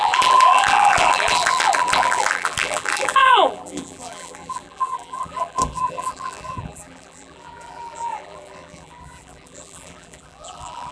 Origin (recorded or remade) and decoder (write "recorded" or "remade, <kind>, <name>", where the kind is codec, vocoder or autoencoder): remade, vocoder, BigVGAN v2